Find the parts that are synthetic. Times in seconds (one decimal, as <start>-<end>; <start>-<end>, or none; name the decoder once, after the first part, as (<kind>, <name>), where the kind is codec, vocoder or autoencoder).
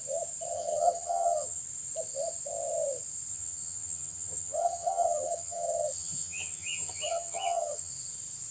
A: 0.5-1.6 (vocoder, HiFi-GAN); 3.3-7.9